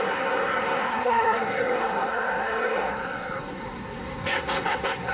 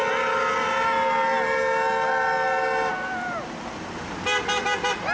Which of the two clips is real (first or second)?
second